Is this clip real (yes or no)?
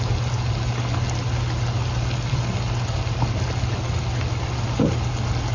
yes